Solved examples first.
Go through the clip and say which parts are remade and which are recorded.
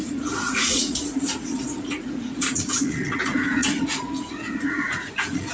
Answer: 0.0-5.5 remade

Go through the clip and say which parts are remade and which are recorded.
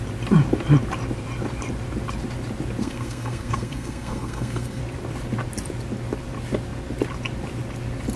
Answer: 0.0-2.8 recorded; 2.8-4.8 remade; 4.8-8.2 recorded